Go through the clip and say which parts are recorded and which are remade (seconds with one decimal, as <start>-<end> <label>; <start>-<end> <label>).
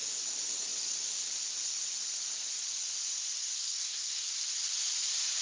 0.0-3.6 recorded; 3.6-4.3 remade; 4.3-5.4 recorded